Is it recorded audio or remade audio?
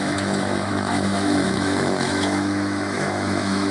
remade